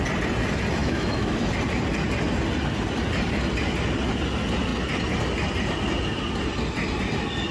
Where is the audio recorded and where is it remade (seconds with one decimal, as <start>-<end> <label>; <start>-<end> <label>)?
0.0-0.8 recorded; 0.8-1.5 remade; 1.5-7.5 recorded